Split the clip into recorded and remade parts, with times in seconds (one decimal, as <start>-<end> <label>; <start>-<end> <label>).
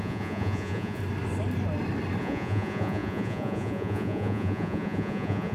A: 0.0-1.0 remade; 1.0-2.2 recorded; 2.2-5.5 remade